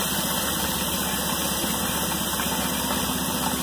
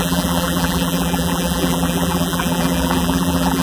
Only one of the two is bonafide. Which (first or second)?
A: first